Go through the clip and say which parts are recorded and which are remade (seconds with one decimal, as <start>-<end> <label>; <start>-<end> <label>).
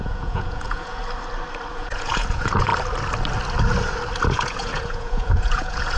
0.0-1.0 remade; 1.0-1.7 recorded; 1.7-2.7 remade; 2.7-4.3 recorded; 4.3-6.0 remade